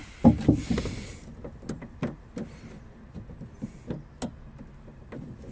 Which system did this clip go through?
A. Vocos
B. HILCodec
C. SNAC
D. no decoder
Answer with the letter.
D